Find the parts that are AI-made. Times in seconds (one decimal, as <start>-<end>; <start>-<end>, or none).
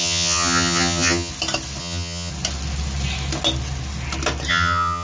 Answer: 0.0-1.3; 1.8-2.3; 4.5-5.0